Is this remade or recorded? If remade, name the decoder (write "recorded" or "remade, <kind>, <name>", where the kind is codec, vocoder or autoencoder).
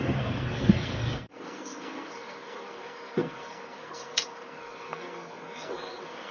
remade, codec, SNAC